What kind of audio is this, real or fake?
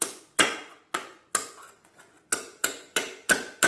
fake